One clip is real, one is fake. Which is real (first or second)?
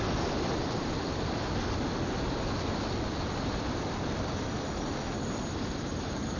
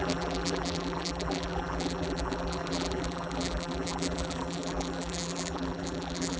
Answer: first